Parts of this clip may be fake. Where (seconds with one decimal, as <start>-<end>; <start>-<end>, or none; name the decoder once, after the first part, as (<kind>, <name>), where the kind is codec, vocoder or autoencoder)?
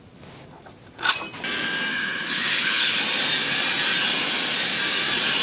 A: 1.9-3.0 (codec, HILCodec)